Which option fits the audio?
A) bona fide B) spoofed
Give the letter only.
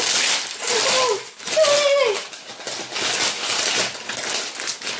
A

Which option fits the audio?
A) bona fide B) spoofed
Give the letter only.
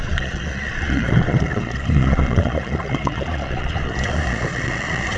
B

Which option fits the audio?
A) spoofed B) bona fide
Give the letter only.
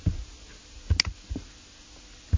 B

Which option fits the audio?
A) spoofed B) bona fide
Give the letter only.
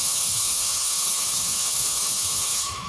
A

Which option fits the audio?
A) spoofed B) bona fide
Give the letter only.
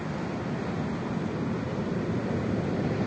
B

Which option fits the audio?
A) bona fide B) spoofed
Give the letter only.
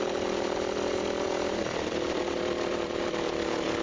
B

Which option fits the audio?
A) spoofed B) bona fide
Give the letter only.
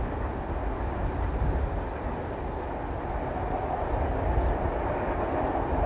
B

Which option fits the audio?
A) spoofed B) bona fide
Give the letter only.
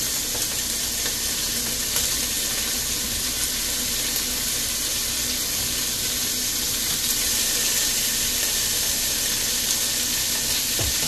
B